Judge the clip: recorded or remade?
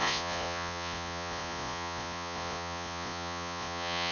remade